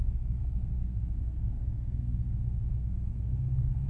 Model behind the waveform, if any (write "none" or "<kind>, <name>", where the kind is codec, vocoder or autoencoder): codec, SNAC